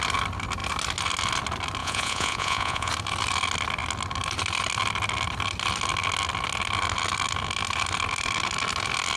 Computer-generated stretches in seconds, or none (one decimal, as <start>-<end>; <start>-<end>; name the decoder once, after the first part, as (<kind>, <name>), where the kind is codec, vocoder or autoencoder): 1.8-2.9 (vocoder, Vocos)